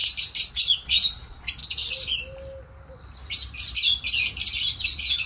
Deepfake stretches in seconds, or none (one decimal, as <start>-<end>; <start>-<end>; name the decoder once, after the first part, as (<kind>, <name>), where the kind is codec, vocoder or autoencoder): 0.5-1.6 (vocoder, Vocos); 4.8-5.3